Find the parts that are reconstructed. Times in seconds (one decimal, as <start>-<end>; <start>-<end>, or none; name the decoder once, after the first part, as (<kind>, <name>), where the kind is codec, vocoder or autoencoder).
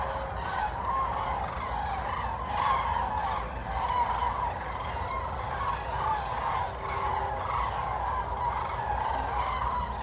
none